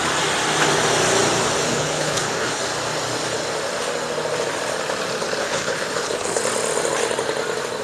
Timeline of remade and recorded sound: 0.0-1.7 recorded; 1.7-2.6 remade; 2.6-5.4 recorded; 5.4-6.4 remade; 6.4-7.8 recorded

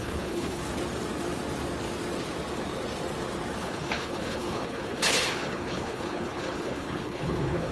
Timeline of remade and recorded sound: 0.0-0.6 remade; 0.6-3.6 recorded; 3.6-7.7 remade

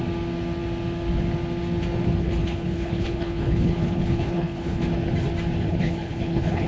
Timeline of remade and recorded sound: 0.0-2.2 recorded; 2.2-4.8 remade; 4.8-5.6 recorded; 5.6-6.7 remade

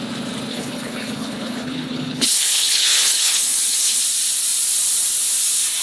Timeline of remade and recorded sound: 0.0-0.5 recorded; 0.5-4.0 remade; 4.0-5.8 recorded

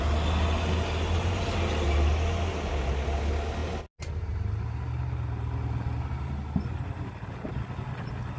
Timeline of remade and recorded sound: 0.0-8.4 recorded

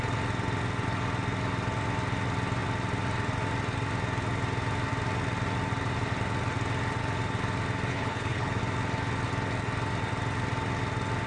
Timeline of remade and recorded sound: 0.0-7.9 recorded; 7.9-8.6 remade; 8.6-11.3 recorded

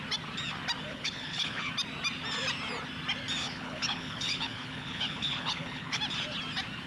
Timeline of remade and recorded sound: 0.0-0.9 recorded; 0.9-1.7 remade; 1.7-3.4 recorded; 3.4-6.0 remade; 6.0-6.9 recorded

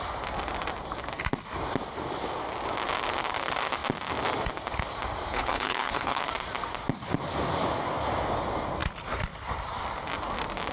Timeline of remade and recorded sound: 0.0-5.3 recorded; 5.3-6.2 remade; 6.2-10.7 recorded